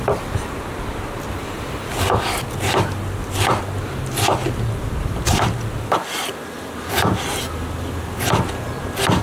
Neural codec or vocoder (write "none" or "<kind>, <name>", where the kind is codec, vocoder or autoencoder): none